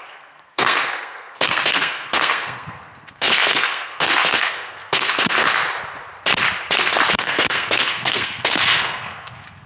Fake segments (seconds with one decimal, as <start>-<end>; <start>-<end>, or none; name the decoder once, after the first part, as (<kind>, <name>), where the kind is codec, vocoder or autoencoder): 0.0-5.6 (codec, SNAC); 7.1-9.7